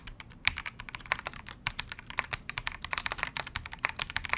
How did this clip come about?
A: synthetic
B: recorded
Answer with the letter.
B